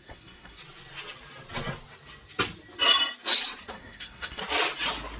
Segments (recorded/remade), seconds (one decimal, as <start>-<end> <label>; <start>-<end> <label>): 0.0-0.6 remade; 0.6-3.7 recorded; 3.7-4.4 remade; 4.4-5.2 recorded